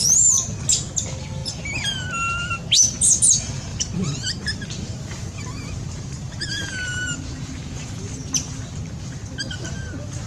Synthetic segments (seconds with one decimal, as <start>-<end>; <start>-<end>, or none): 3.7-8.8